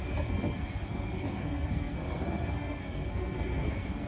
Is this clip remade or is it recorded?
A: remade